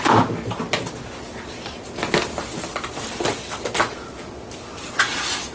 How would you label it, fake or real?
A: real